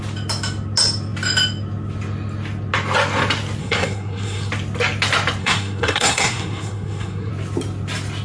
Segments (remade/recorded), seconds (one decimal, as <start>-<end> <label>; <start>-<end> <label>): 0.0-3.6 recorded; 3.6-4.5 remade; 4.5-5.4 recorded; 5.4-7.3 remade; 7.3-8.2 recorded